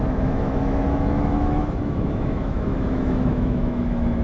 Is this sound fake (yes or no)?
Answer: yes